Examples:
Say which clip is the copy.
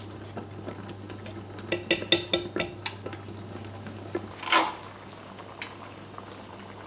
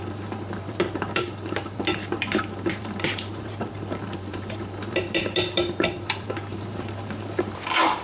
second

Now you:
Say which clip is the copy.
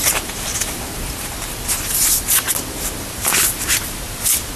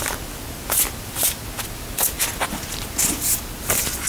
first